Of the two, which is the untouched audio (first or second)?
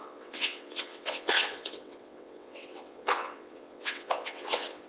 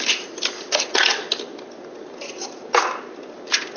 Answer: second